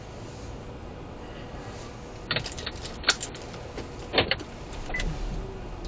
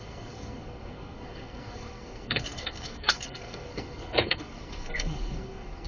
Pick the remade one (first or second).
second